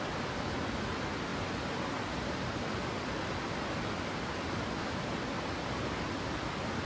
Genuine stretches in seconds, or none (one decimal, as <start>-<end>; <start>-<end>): 0.0-6.8